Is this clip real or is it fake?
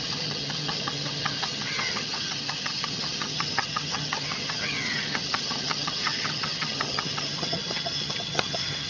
fake